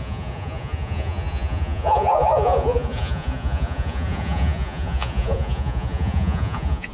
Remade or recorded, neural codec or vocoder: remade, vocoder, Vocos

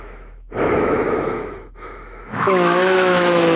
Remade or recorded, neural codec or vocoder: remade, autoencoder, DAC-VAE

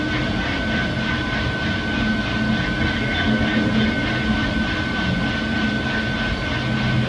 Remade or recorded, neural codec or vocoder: recorded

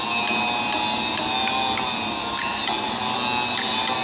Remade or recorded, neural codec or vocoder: recorded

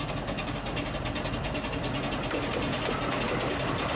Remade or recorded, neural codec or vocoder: recorded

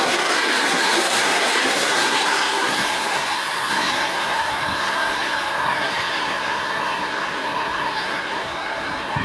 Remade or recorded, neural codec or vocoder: remade, codec, SNAC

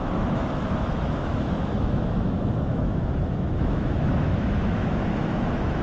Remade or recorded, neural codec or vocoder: remade, autoencoder, DAC-VAE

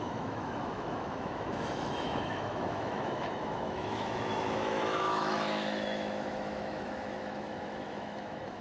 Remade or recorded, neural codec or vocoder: remade, autoencoder, DAC-VAE